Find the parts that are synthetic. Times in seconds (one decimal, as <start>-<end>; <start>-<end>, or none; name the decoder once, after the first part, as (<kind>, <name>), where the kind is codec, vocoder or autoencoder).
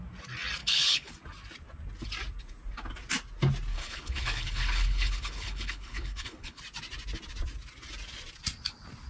0.6-1.1 (codec, HILCodec); 3.7-6.6